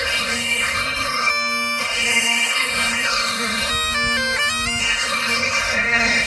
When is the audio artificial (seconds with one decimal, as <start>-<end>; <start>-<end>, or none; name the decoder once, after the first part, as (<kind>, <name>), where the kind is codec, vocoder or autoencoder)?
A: 0.0-1.3 (codec, SNAC); 1.8-3.7; 4.8-6.3